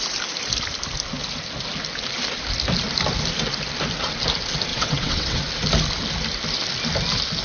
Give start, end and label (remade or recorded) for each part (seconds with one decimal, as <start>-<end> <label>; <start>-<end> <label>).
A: 0.0-4.7 recorded; 4.7-5.4 remade; 5.4-7.4 recorded